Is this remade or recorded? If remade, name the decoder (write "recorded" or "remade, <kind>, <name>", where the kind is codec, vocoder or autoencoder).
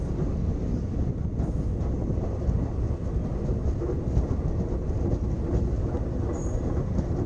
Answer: recorded